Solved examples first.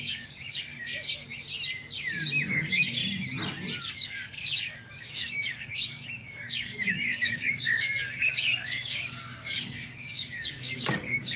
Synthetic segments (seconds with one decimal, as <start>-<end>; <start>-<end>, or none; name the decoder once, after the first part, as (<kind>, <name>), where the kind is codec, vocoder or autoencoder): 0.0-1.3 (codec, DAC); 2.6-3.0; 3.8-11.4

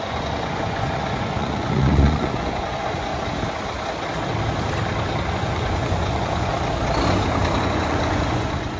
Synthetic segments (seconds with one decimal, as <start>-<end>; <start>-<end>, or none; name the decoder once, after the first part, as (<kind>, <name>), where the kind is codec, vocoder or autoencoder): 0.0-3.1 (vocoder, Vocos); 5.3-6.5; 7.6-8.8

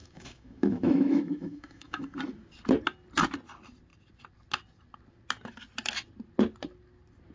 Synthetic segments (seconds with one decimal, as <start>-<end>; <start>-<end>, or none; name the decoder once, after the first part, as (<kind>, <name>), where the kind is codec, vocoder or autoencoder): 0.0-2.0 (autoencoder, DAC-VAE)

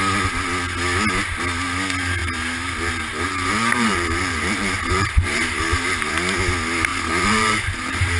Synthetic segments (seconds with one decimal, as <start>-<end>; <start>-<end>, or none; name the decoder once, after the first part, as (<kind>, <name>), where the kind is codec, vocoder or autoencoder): 2.2-6.1 (vocoder, BigVGAN v2); 6.9-8.2